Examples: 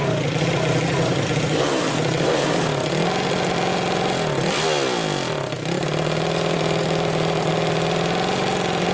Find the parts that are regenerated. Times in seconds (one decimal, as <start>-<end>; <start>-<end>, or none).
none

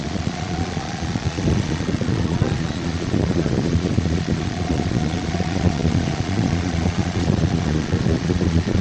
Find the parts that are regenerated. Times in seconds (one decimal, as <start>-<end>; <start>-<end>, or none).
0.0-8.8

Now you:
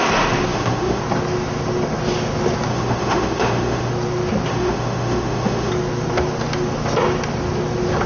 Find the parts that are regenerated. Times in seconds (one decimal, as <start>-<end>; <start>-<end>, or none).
0.5-1.0; 2.7-3.9; 4.5-5.7